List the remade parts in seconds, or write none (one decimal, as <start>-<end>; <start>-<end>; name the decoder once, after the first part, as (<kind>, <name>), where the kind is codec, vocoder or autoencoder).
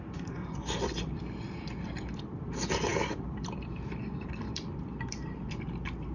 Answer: 0.4-2.2 (vocoder, BigVGAN v2); 2.9-5.4